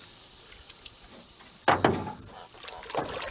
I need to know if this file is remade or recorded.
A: recorded